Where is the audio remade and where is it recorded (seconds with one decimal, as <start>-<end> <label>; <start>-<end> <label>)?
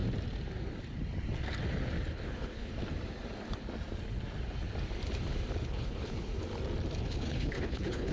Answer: 0.0-2.1 recorded; 2.1-2.7 remade; 2.7-5.6 recorded; 5.6-6.3 remade; 6.3-7.0 recorded; 7.0-8.1 remade